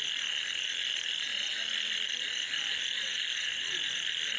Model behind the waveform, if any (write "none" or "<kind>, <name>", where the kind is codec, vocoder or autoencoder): none